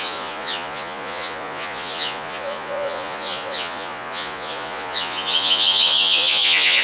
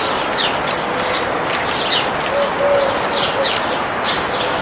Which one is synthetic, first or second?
first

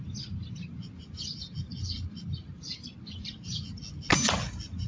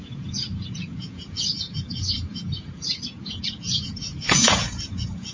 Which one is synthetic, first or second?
second